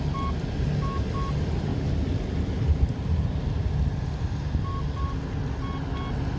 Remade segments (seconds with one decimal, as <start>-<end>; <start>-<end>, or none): none